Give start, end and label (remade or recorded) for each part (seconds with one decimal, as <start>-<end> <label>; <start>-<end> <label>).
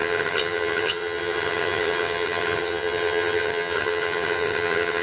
0.0-5.0 remade